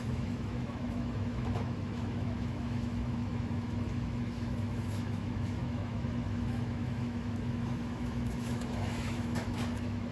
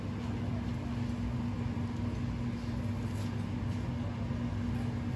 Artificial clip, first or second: first